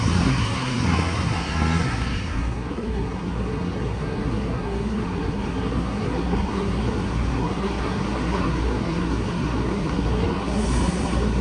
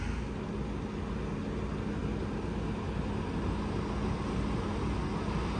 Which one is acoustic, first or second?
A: second